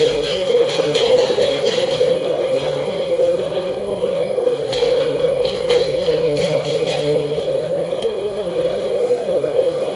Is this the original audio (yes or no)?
no